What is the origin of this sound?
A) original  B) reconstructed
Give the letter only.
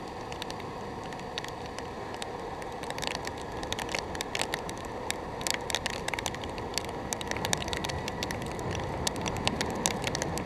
A